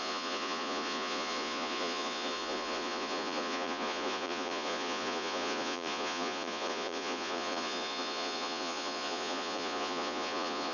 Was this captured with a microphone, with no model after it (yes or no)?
no